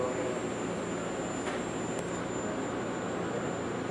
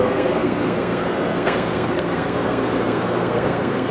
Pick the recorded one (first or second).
first